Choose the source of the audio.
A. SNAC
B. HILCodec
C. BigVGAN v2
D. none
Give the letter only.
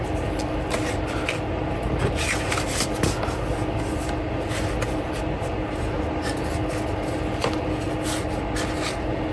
D